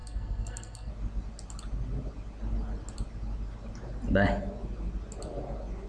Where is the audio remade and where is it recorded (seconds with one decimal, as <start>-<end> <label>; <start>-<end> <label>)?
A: 0.0-0.9 remade; 0.9-5.9 recorded